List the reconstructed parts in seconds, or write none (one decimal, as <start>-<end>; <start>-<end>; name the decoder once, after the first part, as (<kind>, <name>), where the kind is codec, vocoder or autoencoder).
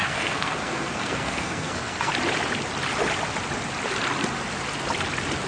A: 0.0-2.1 (codec, SNAC)